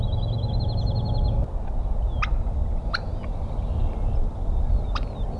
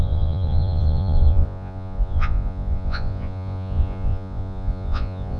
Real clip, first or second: first